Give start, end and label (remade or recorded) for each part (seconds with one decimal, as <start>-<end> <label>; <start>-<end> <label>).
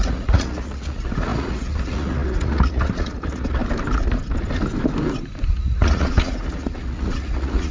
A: 0.0-3.6 remade; 3.6-5.5 recorded; 5.5-7.7 remade